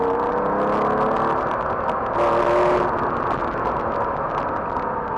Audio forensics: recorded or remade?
recorded